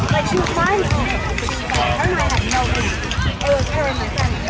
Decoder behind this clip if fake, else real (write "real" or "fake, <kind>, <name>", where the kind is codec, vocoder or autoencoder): real